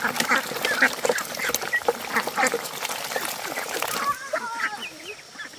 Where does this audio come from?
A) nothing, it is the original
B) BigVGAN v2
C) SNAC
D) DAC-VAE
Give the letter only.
A